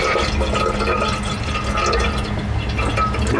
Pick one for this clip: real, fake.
real